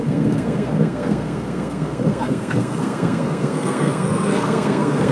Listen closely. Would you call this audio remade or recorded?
remade